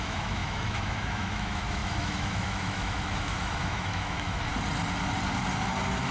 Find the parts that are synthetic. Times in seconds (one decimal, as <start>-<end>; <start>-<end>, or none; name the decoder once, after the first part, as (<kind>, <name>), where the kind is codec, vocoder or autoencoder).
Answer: 0.0-4.5 (autoencoder, DAC-VAE)